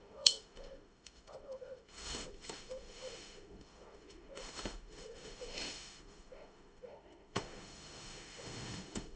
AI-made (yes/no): yes